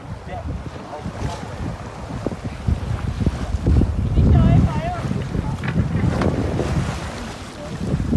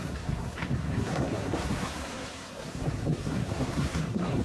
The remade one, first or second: second